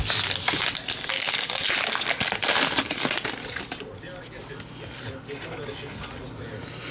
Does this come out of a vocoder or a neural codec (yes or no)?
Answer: no